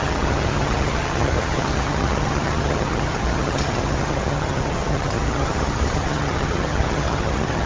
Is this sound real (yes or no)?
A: no